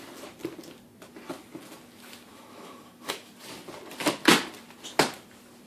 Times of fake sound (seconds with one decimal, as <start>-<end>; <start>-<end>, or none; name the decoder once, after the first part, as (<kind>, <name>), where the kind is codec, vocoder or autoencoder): 2.3-3.3 (autoencoder, DAC-VAE)